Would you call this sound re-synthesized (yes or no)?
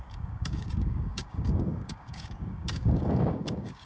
yes